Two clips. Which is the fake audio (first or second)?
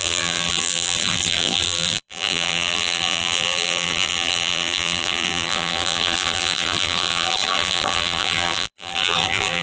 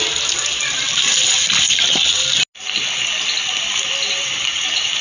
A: first